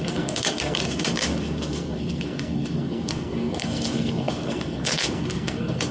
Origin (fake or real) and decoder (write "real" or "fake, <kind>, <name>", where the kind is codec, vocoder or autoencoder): fake, codec, SNAC